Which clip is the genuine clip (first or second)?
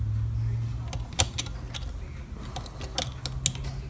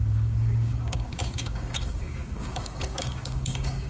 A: first